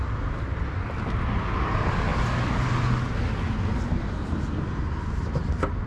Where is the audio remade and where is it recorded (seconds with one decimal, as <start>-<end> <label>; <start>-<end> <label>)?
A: 0.0-5.9 recorded